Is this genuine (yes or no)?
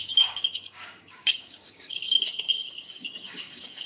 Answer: no